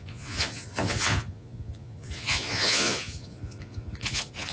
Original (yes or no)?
no